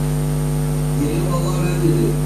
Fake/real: real